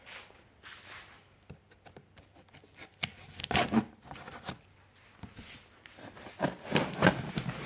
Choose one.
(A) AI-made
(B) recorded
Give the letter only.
B